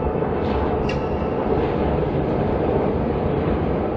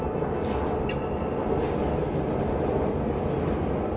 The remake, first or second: first